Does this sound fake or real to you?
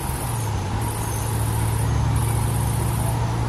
real